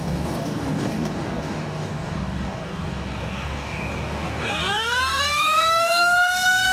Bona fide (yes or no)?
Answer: no